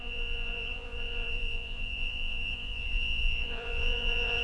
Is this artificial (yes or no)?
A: yes